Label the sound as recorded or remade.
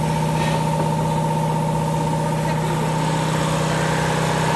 recorded